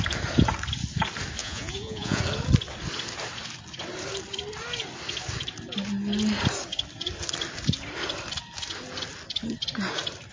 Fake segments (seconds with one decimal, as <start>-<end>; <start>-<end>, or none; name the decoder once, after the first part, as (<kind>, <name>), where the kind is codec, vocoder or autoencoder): 1.4-2.2 (vocoder, Vocos)